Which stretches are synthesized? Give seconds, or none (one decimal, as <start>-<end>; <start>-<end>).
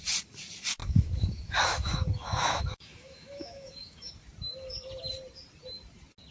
0.8-4.1